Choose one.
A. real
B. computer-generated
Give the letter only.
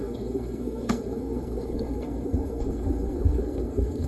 B